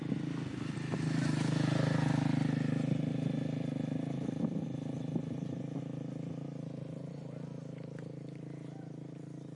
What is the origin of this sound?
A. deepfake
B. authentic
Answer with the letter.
B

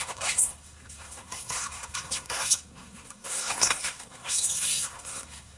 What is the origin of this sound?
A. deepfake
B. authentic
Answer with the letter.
A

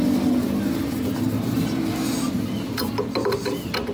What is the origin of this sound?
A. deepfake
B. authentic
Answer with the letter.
B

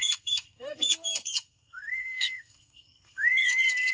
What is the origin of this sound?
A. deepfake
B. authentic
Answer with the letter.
A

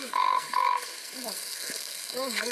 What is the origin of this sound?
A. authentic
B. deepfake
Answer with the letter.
B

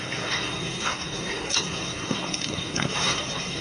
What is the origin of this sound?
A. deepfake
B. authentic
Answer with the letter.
A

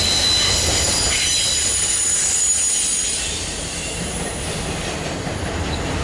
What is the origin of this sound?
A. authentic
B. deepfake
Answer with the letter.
A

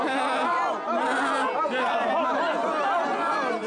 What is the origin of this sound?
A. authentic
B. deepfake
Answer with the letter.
A